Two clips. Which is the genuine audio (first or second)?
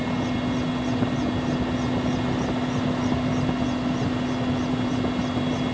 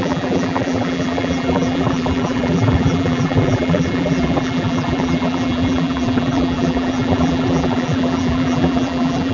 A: first